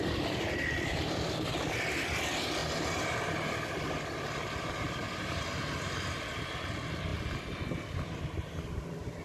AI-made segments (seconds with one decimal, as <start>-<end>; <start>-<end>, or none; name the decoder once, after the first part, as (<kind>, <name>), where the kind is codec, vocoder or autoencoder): 0.0-2.6 (vocoder, BigVGAN v2); 4.7-9.2